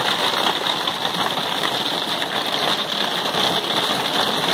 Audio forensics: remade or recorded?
recorded